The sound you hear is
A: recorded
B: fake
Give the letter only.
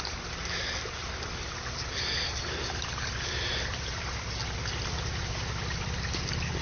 A